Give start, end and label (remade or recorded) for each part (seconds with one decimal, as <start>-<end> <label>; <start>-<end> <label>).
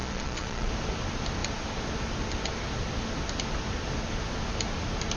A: 0.0-0.7 remade; 0.7-5.2 recorded